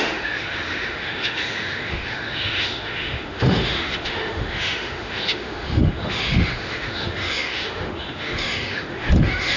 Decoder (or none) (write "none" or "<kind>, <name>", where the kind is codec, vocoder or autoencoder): autoencoder, DAC-VAE